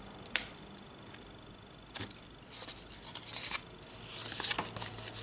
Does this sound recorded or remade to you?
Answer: recorded